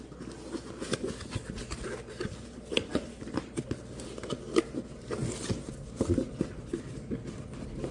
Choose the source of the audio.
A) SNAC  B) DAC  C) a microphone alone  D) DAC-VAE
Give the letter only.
C